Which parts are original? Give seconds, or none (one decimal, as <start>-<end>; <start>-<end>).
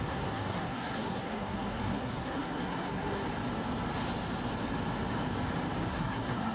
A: 3.2-5.9